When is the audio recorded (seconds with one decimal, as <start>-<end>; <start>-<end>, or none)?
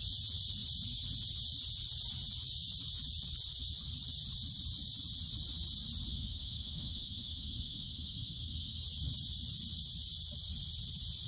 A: 0.0-6.1; 8.8-11.3